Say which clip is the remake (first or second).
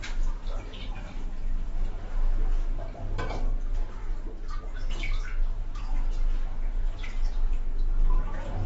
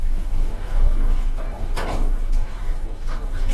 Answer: second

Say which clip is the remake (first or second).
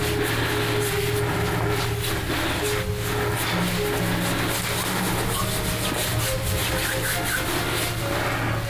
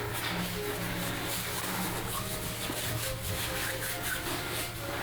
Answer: second